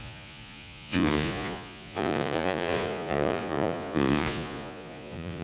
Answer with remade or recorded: remade